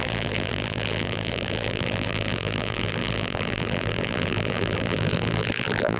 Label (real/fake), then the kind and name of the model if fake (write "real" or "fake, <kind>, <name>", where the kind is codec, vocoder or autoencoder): fake, vocoder, BigVGAN v2